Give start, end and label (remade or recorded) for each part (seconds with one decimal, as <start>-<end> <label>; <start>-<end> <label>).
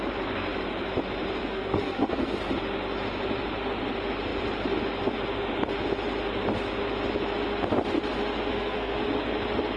0.0-1.4 recorded; 1.4-2.4 remade; 2.4-8.5 recorded; 8.5-9.0 remade; 9.0-9.8 recorded